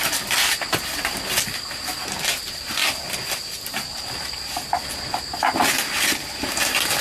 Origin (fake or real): real